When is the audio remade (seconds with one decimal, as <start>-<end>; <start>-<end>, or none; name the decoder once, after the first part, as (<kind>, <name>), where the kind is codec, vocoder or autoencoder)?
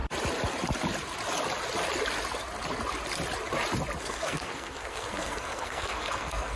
4.0-6.6 (codec, SNAC)